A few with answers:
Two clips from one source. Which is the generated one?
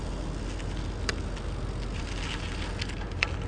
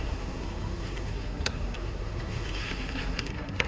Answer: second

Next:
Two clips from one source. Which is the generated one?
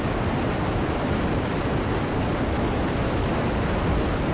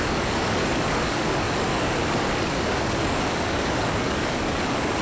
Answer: second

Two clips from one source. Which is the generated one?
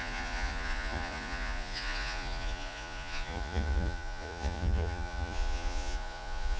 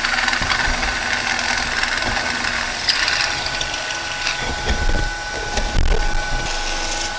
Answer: first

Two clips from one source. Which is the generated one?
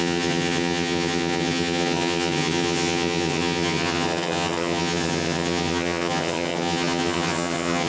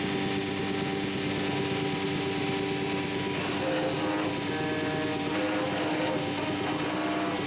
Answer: first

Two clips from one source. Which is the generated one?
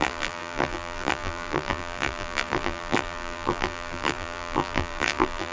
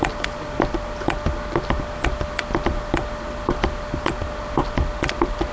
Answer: first